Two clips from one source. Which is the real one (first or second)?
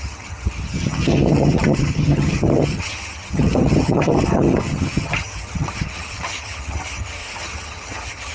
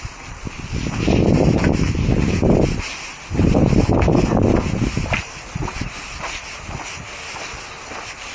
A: second